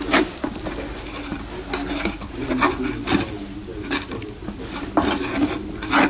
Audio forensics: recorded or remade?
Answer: recorded